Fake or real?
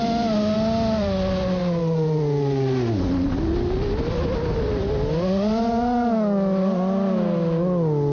real